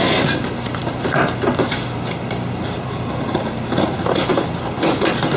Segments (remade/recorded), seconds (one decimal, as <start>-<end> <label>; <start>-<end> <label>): 0.0-5.4 recorded

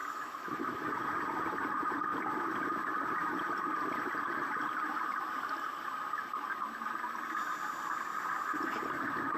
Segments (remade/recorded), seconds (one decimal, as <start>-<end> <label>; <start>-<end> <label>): 0.0-0.9 remade; 0.9-9.4 recorded

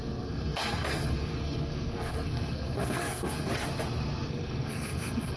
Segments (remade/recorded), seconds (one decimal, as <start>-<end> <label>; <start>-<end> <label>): 0.0-3.5 remade; 3.5-4.3 recorded; 4.3-5.4 remade

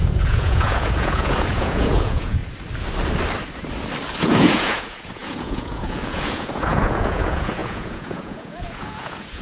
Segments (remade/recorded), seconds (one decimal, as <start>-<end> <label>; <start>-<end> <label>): 0.0-2.4 remade; 2.4-4.2 recorded; 4.2-9.4 remade

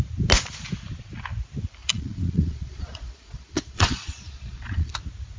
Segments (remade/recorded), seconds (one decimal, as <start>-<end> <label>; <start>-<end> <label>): 0.0-1.8 recorded; 1.8-4.9 remade; 4.9-5.4 recorded

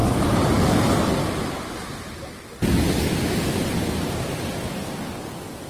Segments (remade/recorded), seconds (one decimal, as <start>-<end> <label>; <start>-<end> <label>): 0.0-5.7 recorded

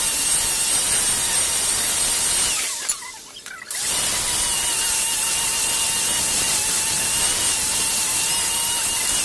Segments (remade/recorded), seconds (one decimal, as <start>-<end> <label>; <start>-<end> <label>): 0.0-9.2 recorded